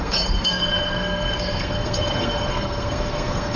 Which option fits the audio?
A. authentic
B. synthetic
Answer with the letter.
B